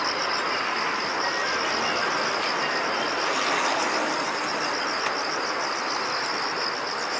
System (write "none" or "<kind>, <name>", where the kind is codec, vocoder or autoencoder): none